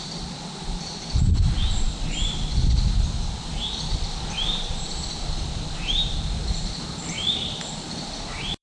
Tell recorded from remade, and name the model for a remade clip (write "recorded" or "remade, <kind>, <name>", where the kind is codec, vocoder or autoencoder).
remade, vocoder, BigVGAN v2